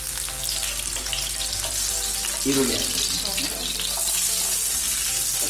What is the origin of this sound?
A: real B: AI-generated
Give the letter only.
A